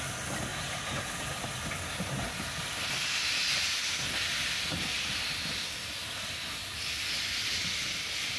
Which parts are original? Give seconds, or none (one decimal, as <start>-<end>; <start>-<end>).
0.0-0.5; 1.5-8.4

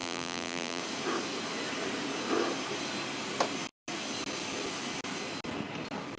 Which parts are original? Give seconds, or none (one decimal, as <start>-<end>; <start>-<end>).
0.8-6.2

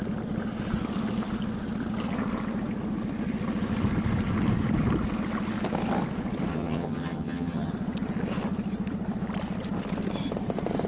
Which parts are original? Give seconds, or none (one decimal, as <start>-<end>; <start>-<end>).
0.0-6.5; 7.7-10.9

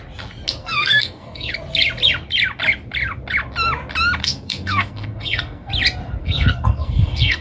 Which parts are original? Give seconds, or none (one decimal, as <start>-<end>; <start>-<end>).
0.0-0.6; 1.5-4.2; 5.7-6.2